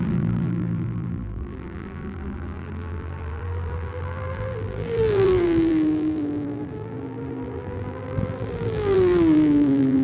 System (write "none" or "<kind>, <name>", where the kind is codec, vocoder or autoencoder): vocoder, BigVGAN v2